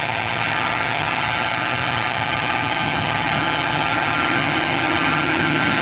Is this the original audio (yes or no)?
no